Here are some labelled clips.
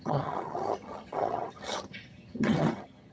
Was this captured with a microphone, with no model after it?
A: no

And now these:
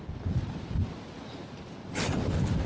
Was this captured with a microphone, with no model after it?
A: yes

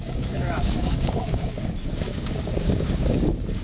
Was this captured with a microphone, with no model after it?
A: no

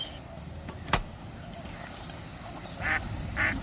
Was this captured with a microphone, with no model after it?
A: yes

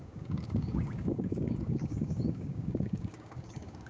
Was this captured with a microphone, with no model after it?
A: no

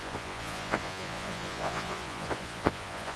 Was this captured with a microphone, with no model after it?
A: no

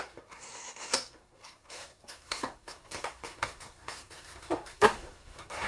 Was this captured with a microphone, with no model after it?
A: no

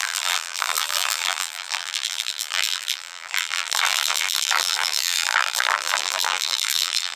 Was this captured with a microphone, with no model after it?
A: no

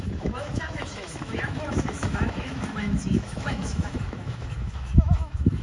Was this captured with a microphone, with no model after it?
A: no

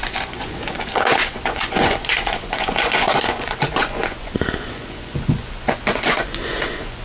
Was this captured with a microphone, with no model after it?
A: no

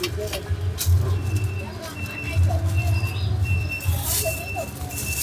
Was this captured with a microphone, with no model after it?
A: yes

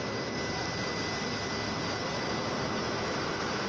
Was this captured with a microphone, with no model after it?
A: yes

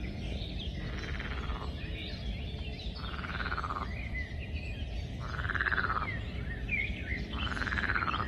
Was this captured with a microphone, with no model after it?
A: yes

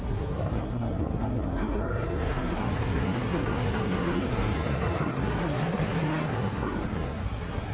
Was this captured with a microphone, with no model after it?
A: no